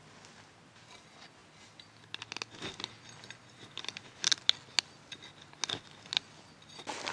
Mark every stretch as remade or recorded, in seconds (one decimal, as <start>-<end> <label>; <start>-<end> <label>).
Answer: 0.0-7.1 recorded